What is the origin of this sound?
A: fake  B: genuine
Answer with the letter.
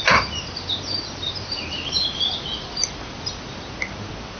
B